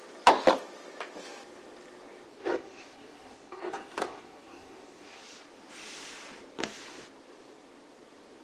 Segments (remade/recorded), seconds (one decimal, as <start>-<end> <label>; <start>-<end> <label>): 0.0-2.4 recorded; 2.4-5.2 remade; 5.2-8.4 recorded